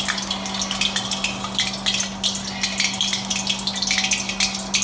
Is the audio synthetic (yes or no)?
no